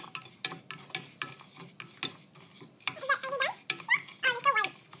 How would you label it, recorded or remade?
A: recorded